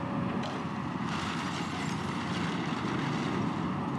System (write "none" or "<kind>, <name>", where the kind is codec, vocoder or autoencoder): none